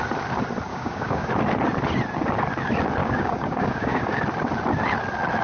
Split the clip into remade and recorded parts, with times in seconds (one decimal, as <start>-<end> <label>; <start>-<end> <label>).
0.0-0.7 recorded; 0.7-1.3 remade; 1.3-3.0 recorded; 3.0-4.2 remade; 4.2-5.4 recorded